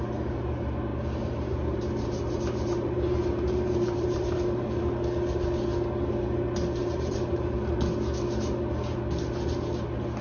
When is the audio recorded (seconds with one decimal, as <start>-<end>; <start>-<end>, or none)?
0.0-0.9; 4.8-6.8; 7.8-10.2

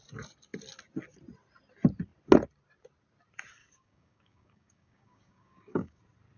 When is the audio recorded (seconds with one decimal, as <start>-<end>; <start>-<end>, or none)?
0.0-3.6; 6.0-6.4